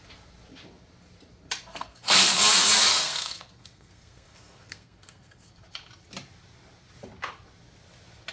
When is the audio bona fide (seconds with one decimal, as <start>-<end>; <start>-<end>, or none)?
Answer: 0.0-1.7; 2.4-2.9; 5.5-8.3